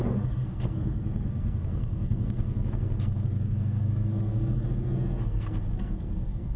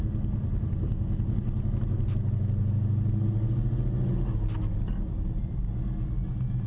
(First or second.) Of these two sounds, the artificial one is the first